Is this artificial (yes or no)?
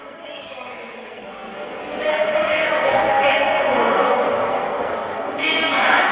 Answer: yes